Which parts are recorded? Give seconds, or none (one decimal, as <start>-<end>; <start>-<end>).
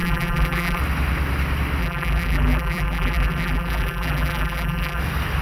0.8-1.8; 5.0-5.4